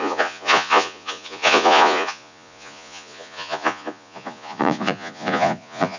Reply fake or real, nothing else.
fake